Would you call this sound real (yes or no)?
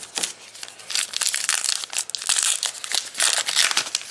yes